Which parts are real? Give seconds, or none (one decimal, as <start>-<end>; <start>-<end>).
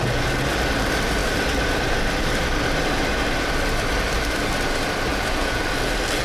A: 0.0-5.1; 5.6-6.2